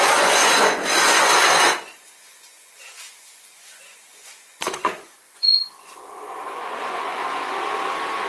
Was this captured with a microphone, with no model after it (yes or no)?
no